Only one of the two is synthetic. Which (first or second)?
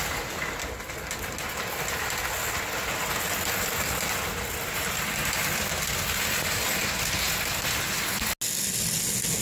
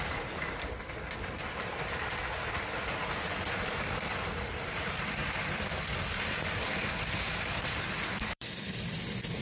second